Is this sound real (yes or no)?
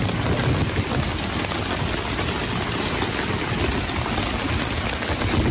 yes